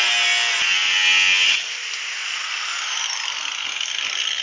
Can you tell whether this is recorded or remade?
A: recorded